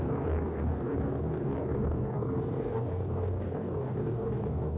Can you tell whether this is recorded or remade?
remade